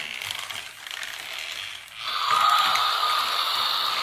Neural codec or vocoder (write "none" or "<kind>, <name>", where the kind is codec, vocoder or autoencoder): none